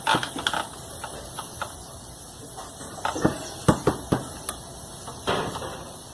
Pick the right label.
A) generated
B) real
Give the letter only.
B